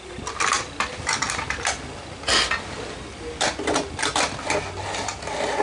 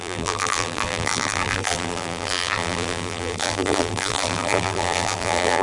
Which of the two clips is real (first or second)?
first